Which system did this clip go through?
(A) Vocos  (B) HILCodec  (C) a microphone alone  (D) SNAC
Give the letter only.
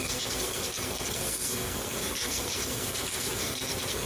D